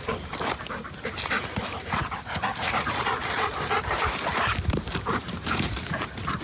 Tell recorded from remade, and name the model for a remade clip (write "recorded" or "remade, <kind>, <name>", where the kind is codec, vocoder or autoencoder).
remade, vocoder, BigVGAN v2